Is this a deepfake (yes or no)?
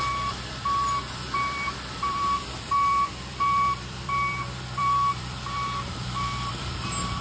yes